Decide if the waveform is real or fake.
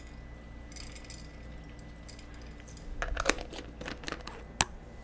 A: real